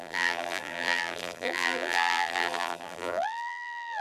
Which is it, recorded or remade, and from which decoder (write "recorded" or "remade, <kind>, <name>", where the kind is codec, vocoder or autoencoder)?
remade, vocoder, BigVGAN v2